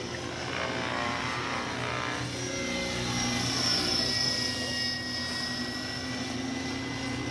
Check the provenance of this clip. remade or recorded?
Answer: recorded